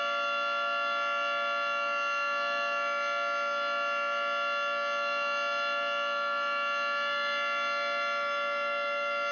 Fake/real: real